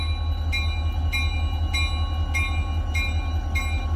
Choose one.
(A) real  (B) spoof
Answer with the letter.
A